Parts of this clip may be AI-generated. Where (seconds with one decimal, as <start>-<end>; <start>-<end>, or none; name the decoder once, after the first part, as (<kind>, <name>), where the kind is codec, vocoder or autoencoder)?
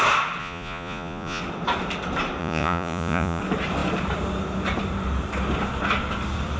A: 0.4-1.4 (vocoder, Vocos); 2.4-3.4